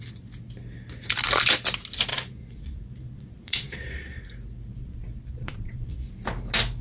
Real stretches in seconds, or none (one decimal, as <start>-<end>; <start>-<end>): 0.0-2.1; 4.2-4.8; 6.1-6.8